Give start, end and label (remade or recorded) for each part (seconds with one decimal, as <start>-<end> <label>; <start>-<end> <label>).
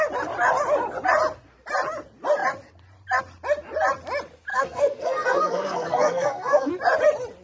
0.0-4.5 recorded; 4.5-6.7 remade; 6.7-7.4 recorded